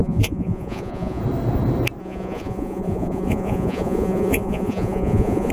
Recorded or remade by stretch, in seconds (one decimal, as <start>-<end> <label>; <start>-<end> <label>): 0.0-1.2 remade; 1.2-2.0 recorded; 2.0-5.5 remade